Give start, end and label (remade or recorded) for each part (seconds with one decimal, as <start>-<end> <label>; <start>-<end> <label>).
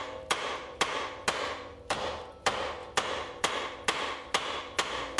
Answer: 0.0-1.7 recorded; 1.7-2.2 remade; 2.2-5.2 recorded